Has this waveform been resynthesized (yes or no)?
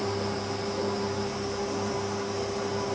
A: no